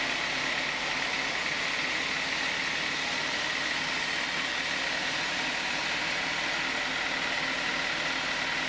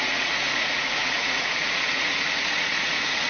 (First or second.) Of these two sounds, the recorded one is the first